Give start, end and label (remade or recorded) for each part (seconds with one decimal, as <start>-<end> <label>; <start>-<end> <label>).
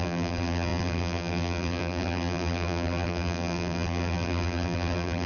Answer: 0.0-5.3 remade